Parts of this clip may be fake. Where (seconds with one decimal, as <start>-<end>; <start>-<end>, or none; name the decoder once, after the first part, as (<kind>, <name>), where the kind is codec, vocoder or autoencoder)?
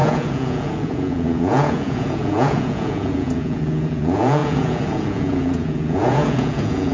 0.0-6.9 (vocoder, Vocos)